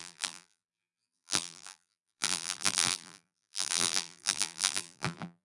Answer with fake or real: fake